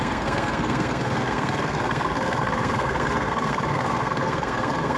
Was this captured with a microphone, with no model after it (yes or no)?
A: no